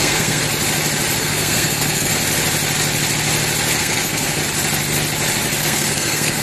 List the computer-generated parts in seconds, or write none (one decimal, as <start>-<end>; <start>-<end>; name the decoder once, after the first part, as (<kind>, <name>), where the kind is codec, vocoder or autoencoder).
0.0-0.4 (codec, SNAC); 1.2-2.1; 3.8-4.4; 5.6-6.4